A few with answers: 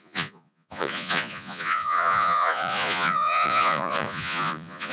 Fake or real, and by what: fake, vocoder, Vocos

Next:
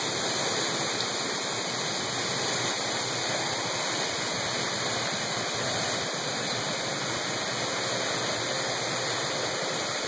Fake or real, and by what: real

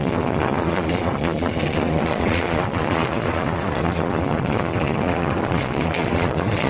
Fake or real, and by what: fake, vocoder, Vocos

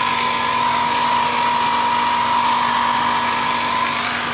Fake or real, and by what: real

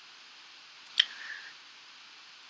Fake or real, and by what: real